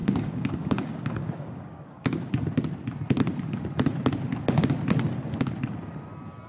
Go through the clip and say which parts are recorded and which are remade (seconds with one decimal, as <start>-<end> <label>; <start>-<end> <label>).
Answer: 0.0-2.3 remade; 2.3-6.5 recorded